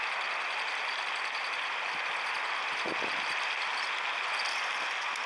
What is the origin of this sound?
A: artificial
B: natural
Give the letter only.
B